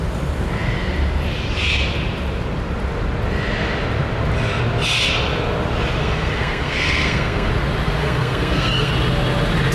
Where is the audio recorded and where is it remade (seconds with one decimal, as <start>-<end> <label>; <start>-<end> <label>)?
0.0-6.0 recorded; 6.0-7.5 remade; 7.5-8.0 recorded; 8.0-8.9 remade; 8.9-9.7 recorded